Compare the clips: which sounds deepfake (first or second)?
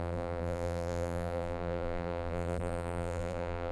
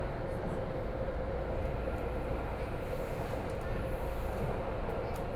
first